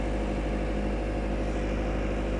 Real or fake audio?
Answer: real